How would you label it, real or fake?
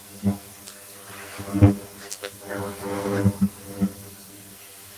fake